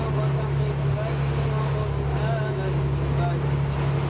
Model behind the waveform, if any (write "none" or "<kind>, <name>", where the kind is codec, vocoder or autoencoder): none